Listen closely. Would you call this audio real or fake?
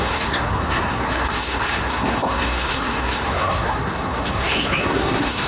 fake